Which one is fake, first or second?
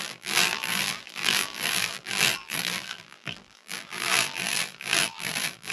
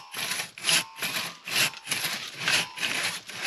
first